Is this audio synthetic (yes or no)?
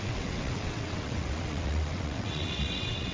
yes